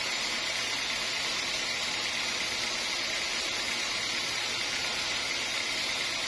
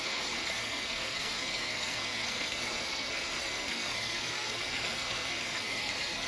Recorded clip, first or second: first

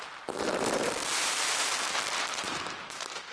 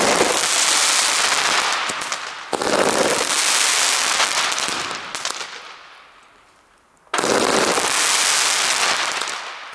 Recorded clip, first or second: second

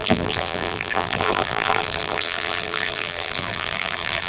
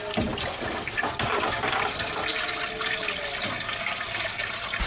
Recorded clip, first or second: second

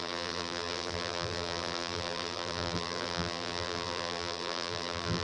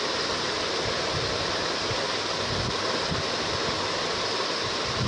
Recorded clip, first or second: second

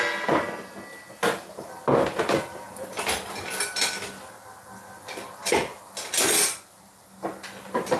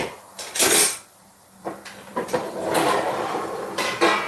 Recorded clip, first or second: first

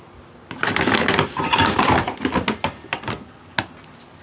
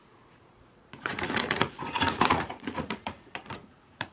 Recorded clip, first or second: first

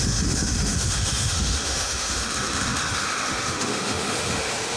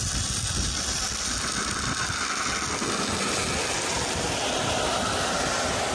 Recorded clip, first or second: second